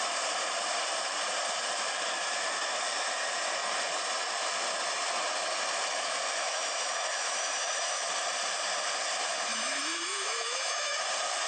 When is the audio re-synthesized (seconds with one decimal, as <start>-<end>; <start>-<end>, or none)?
6.4-8.1; 9.5-11.0